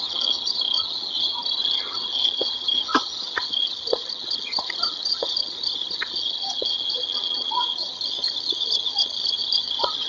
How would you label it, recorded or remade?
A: remade